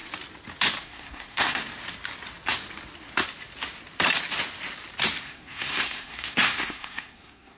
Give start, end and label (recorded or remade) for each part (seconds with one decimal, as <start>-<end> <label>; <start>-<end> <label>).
0.0-0.8 recorded; 0.8-1.6 remade; 1.6-5.2 recorded; 5.2-7.6 remade